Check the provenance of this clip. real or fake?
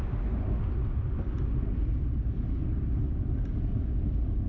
real